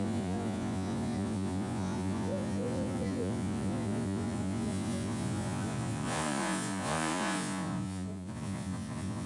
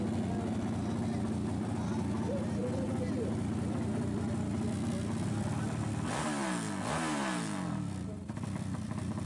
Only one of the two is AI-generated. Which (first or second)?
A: first